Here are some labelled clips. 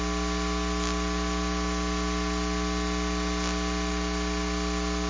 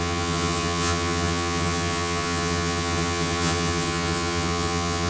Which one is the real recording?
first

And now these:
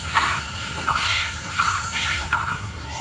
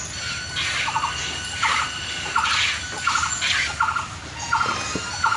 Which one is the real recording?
second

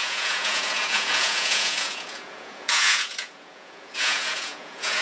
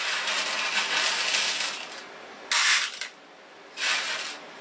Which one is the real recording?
second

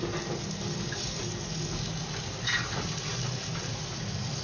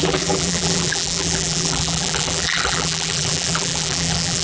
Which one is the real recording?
first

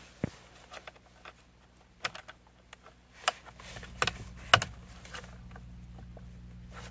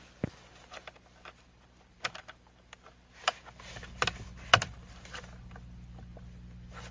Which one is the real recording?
first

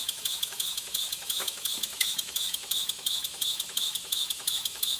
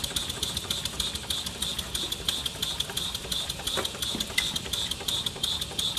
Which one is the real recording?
second